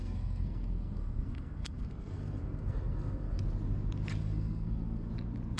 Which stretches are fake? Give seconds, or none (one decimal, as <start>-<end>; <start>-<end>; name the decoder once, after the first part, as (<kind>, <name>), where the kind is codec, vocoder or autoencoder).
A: 0.0-3.4 (codec, SNAC); 4.2-5.1